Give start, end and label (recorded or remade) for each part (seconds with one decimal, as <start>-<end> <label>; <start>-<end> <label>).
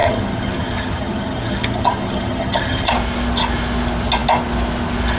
0.0-2.9 remade; 2.9-5.2 recorded